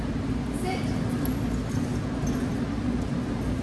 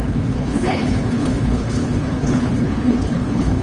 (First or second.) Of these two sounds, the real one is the first